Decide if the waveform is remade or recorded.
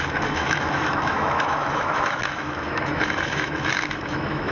remade